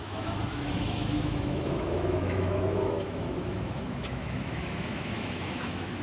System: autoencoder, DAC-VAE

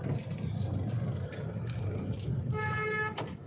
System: none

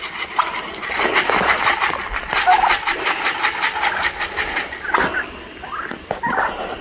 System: none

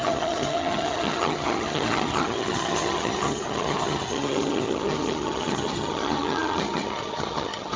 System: vocoder, HiFi-GAN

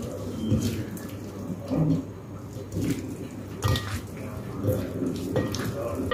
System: none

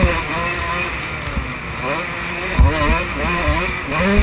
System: none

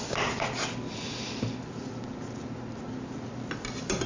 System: none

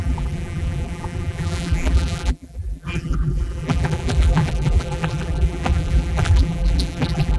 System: vocoder, BigVGAN v2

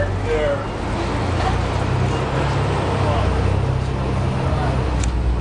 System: none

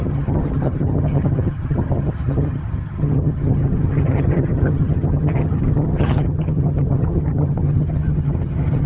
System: vocoder, HiFi-GAN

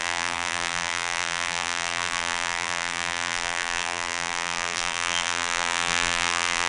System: vocoder, BigVGAN v2